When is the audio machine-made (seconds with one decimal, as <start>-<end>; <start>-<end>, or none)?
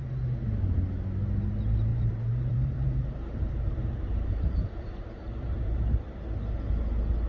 1.9-6.2